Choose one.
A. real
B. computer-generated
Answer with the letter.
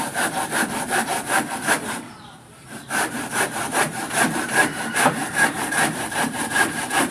B